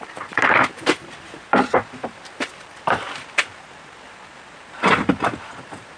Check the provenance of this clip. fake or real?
fake